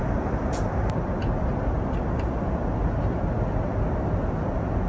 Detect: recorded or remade remade